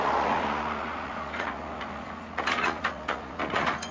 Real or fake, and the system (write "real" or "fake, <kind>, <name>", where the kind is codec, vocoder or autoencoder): fake, vocoder, Vocos